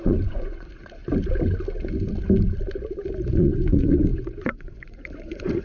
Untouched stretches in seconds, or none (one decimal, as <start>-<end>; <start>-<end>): 1.0-3.3